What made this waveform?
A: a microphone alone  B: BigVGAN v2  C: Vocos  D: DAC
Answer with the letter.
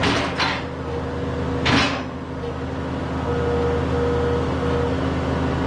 A